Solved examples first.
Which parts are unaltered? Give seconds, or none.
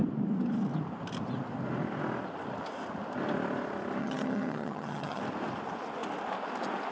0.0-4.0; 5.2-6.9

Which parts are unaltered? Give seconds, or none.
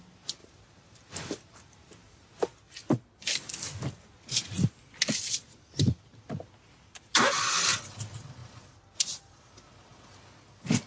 0.0-0.4; 2.3-8.4; 9.2-10.9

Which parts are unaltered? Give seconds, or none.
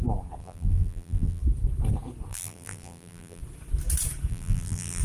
0.0-0.4; 1.4-2.3; 3.4-4.3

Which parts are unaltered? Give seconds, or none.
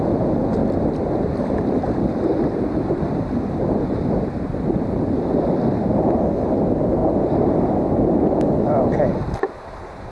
0.0-0.6; 3.1-10.1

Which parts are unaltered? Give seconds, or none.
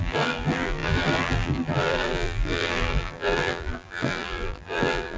none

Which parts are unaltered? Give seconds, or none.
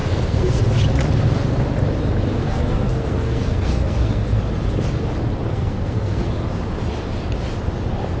0.6-2.4; 4.4-5.5; 6.3-8.2